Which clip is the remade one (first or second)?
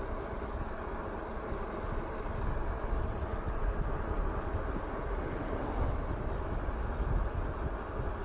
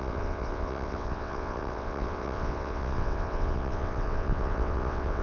second